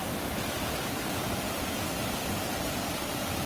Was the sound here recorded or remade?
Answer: remade